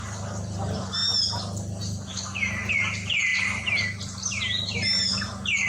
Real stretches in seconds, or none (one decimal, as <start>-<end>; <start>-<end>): 0.0-5.7

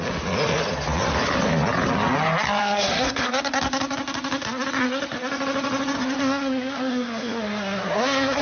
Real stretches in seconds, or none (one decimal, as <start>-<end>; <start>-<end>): 0.0-2.6; 3.3-6.2

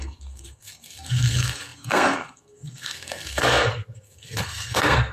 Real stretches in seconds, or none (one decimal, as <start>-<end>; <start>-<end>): none

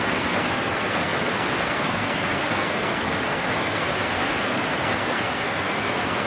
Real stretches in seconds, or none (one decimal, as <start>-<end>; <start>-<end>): none

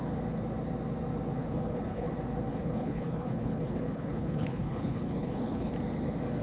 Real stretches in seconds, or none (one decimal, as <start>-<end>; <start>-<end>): 0.0-1.4; 2.1-2.5; 5.7-6.4

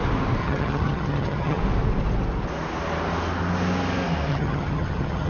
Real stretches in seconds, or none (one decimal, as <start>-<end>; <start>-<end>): 0.0-0.4; 1.6-4.3